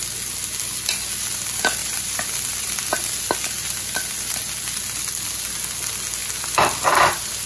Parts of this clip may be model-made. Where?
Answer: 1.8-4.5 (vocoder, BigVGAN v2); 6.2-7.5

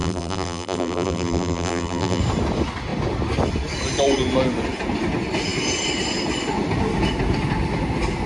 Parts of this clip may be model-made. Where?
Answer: 0.0-2.2 (vocoder, BigVGAN v2)

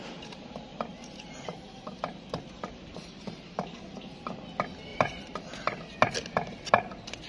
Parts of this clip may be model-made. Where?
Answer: 0.0-4.4 (vocoder, BigVGAN v2); 4.9-5.4

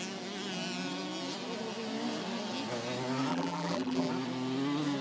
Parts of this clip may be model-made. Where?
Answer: 3.3-4.1 (vocoder, BigVGAN v2)

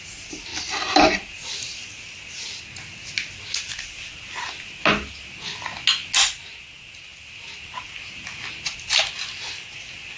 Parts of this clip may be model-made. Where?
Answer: 0.5-1.9 (vocoder, BigVGAN v2)

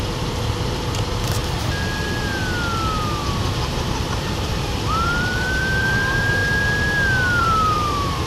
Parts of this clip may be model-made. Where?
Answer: 0.0-1.4 (vocoder, BigVGAN v2); 4.1-6.4; 7.4-8.3

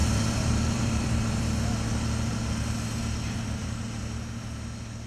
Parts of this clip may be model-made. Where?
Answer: 0.0-1.4 (vocoder, BigVGAN v2); 3.0-3.8